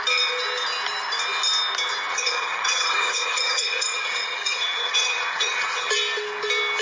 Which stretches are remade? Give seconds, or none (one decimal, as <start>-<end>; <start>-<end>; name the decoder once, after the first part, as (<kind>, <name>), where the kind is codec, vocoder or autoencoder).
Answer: 2.1-5.9 (vocoder, HiFi-GAN)